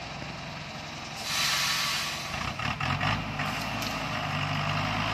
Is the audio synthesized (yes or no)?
no